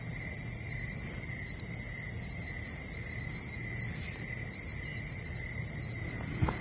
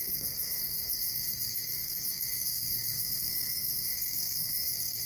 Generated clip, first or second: second